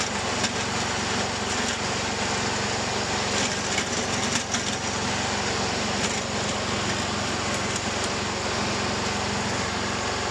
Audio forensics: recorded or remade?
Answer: recorded